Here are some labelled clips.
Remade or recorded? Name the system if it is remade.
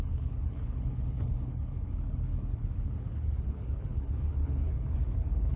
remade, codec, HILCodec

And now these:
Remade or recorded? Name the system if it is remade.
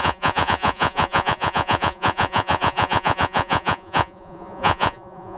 remade, vocoder, Vocos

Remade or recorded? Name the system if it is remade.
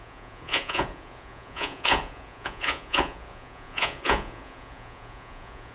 remade, vocoder, Vocos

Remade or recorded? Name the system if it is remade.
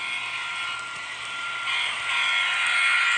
recorded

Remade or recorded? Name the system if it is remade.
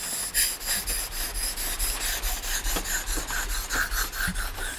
recorded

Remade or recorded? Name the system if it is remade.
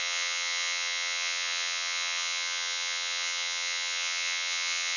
remade, vocoder, WaveNeXt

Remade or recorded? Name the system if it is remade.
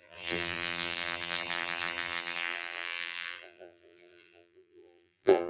remade, vocoder, BigVGAN v2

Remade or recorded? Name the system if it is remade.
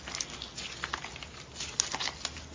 recorded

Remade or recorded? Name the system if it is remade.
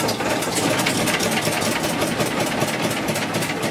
recorded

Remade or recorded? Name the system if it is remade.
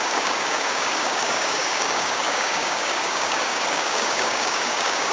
remade, codec, DAC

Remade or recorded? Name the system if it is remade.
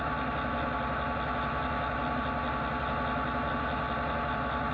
recorded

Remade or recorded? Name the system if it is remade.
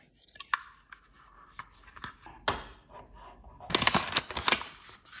recorded